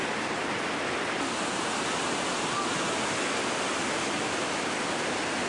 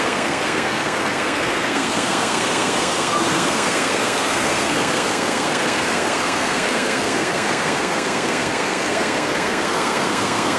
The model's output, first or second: second